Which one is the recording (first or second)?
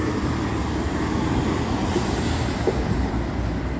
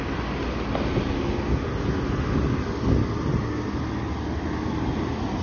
second